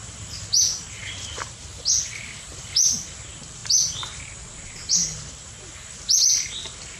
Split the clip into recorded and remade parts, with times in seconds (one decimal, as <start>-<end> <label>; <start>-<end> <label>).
0.0-7.0 recorded